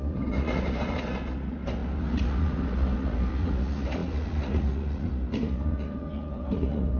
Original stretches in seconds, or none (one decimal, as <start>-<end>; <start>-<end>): none

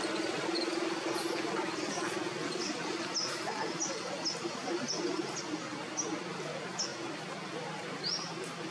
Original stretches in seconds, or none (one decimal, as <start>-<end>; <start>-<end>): 0.0-8.7

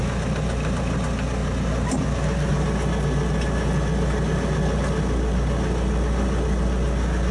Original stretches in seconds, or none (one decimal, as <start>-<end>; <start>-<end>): 0.0-7.3

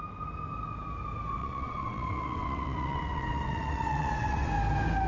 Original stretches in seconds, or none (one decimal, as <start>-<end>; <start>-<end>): 0.0-1.4; 4.5-5.1

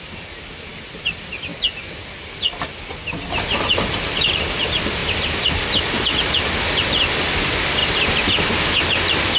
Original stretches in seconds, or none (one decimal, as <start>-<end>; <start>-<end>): 1.5-2.0; 7.8-8.4

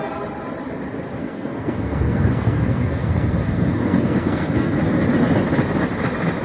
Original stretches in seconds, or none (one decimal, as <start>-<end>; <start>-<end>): 0.0-1.2; 4.8-6.4